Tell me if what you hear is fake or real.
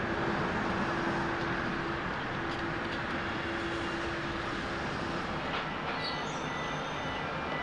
real